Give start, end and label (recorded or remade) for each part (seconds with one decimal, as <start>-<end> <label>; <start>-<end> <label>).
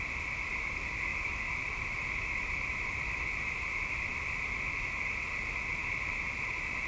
0.0-1.1 recorded; 1.1-3.3 remade; 3.3-6.9 recorded